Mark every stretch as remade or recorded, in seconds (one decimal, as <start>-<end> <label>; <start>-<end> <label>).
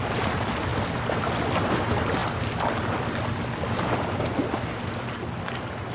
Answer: 0.0-5.9 recorded